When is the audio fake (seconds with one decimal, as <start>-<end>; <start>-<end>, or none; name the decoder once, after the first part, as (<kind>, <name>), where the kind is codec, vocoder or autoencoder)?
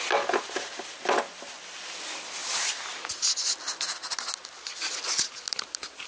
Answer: 0.0-2.4 (vocoder, BigVGAN v2); 5.5-6.1